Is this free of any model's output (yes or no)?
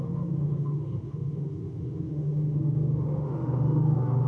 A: no